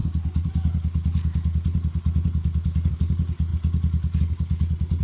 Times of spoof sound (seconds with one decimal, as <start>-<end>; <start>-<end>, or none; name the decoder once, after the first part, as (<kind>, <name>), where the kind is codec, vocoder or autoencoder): none